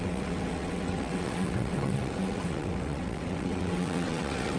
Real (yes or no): no